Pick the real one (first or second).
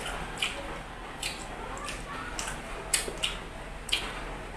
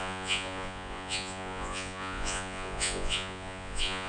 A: first